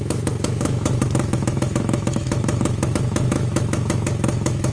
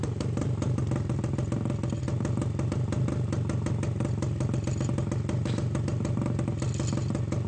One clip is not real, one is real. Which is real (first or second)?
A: second